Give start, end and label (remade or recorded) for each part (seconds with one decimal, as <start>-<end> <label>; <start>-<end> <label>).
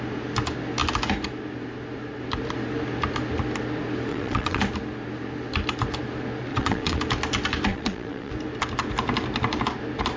0.0-4.1 recorded; 4.1-4.6 remade; 4.6-6.5 recorded; 6.5-7.0 remade; 7.0-7.7 recorded; 7.7-8.3 remade; 8.3-10.2 recorded